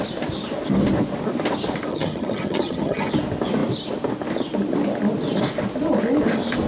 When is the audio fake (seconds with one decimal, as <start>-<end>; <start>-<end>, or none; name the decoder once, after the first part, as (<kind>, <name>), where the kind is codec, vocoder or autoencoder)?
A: 1.9-3.1 (vocoder, HiFi-GAN)